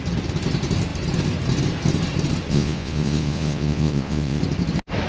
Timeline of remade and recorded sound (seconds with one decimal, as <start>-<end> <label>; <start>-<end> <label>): 0.0-2.5 recorded; 2.5-4.4 remade; 4.4-5.1 recorded